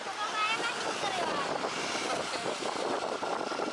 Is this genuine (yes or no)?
yes